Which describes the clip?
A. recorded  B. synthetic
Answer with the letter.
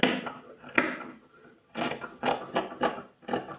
A